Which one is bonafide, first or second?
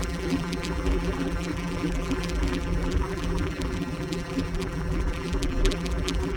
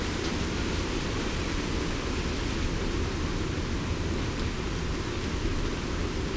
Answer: second